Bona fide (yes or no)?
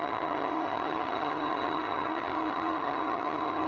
no